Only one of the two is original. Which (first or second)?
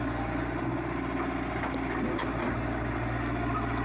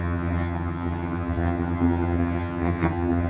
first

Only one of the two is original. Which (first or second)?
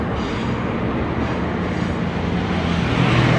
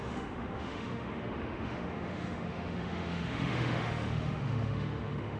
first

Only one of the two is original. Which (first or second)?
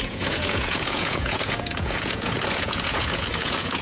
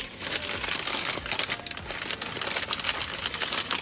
second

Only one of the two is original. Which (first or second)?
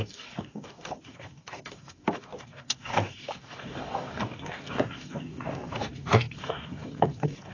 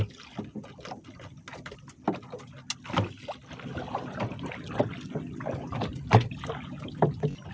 second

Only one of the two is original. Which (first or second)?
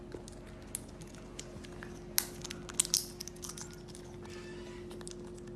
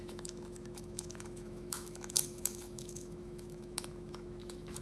first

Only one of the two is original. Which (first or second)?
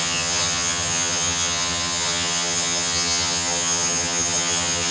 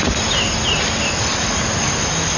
second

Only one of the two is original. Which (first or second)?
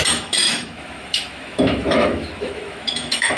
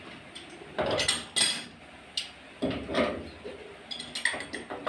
second